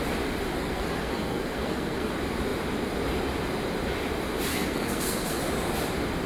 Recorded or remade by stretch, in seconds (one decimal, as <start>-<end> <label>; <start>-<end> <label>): 0.0-0.5 recorded; 0.5-2.1 remade; 2.1-4.5 recorded; 4.5-5.4 remade; 5.4-6.3 recorded